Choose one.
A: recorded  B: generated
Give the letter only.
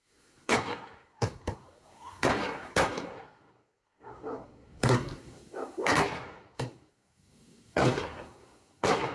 B